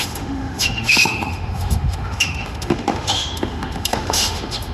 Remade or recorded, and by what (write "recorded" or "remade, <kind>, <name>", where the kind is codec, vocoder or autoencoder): remade, autoencoder, DAC-VAE